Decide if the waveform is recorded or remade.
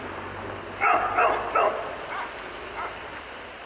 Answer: recorded